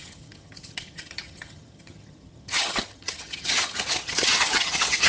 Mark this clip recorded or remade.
remade